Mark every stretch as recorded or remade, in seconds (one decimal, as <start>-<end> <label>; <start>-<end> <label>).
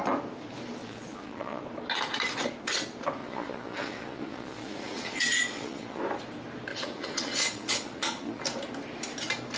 0.0-0.8 recorded; 0.8-1.6 remade; 1.6-3.2 recorded; 3.2-6.0 remade; 6.0-6.7 recorded; 6.7-8.4 remade; 8.4-9.6 recorded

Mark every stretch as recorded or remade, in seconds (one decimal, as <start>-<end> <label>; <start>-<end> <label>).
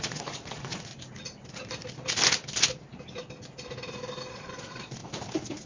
0.0-0.9 remade; 0.9-4.3 recorded; 4.3-5.0 remade; 5.0-5.7 recorded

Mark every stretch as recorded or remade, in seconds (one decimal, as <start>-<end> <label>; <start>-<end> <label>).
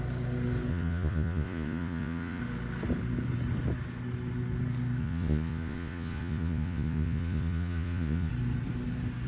0.0-0.7 recorded; 0.7-2.4 remade; 2.4-5.0 recorded; 5.0-8.3 remade; 8.3-9.3 recorded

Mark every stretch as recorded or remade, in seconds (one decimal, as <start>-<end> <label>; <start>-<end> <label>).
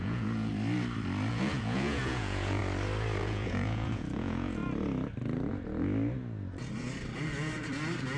0.0-0.5 remade; 0.5-1.3 recorded; 1.3-2.6 remade; 2.6-3.2 recorded; 3.2-4.6 remade; 4.6-8.2 recorded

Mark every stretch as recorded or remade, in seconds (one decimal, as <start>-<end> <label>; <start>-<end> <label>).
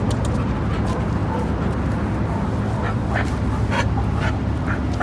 0.0-5.0 recorded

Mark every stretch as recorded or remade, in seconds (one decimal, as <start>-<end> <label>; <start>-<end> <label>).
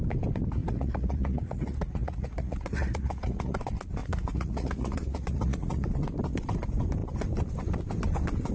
0.0-0.6 recorded; 0.6-3.6 remade; 3.6-4.0 recorded; 4.0-5.9 remade; 5.9-8.5 recorded